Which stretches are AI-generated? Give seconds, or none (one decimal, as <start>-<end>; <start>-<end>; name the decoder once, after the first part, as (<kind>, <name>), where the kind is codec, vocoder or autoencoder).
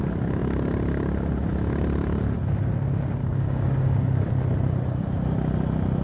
3.2-4.3 (codec, DAC)